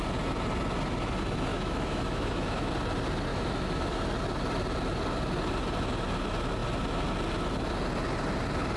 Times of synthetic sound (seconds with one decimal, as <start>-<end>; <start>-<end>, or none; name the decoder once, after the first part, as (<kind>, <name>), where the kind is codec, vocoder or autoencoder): 1.5-2.7 (autoencoder, DAC-VAE); 3.3-4.0